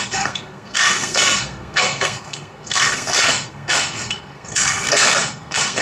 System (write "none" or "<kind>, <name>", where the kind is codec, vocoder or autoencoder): codec, SNAC